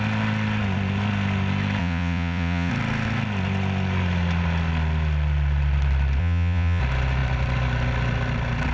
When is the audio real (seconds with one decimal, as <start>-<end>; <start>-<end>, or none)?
0.0-1.8; 2.7-6.2; 6.8-8.7